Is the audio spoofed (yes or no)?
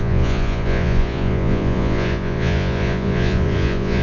yes